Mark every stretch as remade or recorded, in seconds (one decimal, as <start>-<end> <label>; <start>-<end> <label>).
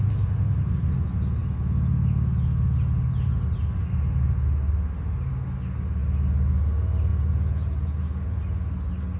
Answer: 0.0-7.1 recorded; 7.1-8.4 remade; 8.4-9.2 recorded